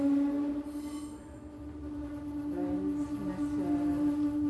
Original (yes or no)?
yes